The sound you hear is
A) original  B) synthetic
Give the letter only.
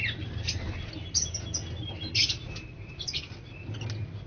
A